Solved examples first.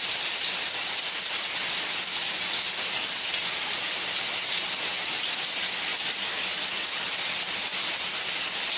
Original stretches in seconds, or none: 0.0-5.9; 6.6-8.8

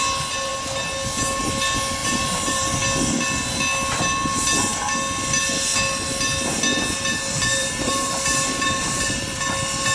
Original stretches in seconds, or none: 0.0-2.0; 2.8-6.7; 9.4-9.9

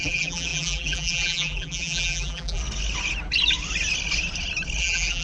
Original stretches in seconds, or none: 2.6-4.8

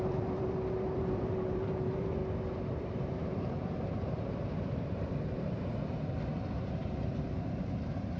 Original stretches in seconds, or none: 2.2-2.9

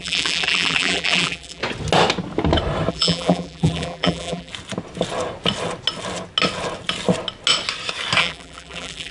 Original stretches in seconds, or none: 1.6-2.9; 4.5-8.2

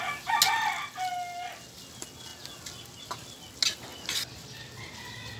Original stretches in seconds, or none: 0.0-3.9; 5.0-5.4

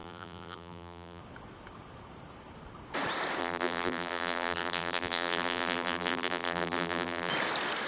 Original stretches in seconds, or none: 1.2-3.4; 7.3-7.9

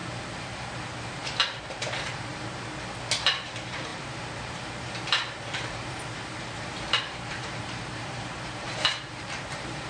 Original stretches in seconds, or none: 2.3-3.2